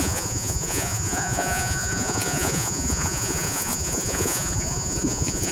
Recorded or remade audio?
remade